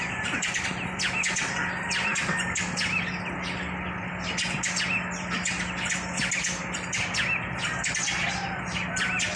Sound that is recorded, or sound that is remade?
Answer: recorded